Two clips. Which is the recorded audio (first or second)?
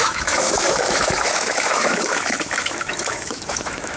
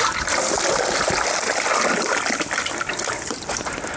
second